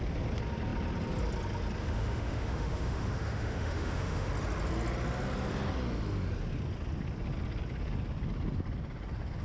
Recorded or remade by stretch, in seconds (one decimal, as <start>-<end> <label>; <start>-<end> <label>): 0.0-1.8 recorded; 1.8-4.3 remade; 4.3-9.4 recorded